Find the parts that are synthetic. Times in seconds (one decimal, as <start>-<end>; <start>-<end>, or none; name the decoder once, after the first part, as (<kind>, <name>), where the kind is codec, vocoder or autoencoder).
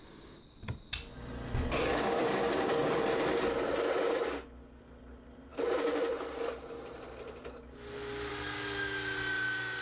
1.9-3.0 (codec, DAC)